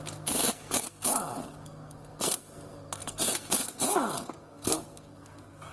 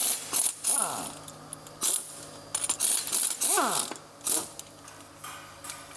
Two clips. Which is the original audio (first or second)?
second